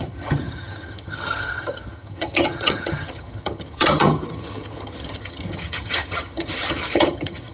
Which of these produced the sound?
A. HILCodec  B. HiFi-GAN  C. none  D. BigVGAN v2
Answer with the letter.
B